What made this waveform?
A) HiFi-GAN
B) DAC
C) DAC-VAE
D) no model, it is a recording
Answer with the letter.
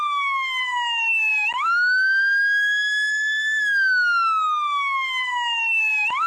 C